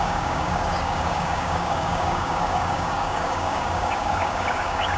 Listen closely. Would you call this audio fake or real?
fake